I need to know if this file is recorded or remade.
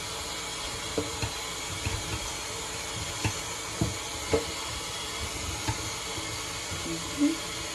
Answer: recorded